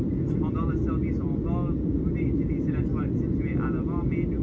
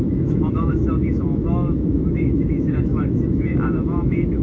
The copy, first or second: second